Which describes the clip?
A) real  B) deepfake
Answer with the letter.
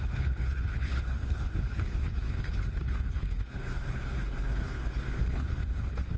B